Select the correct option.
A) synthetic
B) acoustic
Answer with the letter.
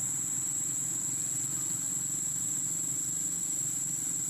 B